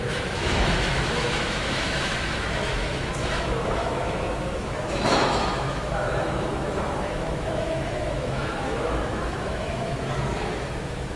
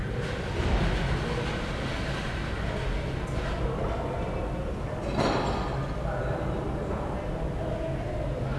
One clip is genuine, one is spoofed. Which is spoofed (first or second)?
first